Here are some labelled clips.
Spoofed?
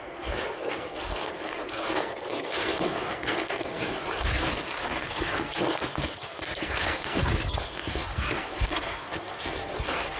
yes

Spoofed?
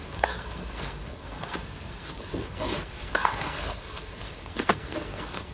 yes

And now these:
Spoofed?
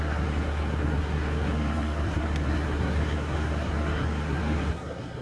yes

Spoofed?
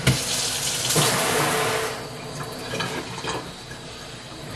no